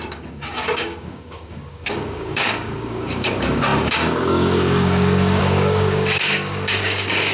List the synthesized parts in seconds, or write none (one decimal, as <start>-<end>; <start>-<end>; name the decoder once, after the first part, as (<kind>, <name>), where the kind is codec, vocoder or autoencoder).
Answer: 0.0-7.3 (codec, DAC)